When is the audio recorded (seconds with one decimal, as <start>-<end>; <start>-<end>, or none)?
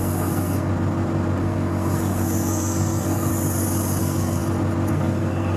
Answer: 0.7-1.4; 3.3-4.0; 4.4-4.9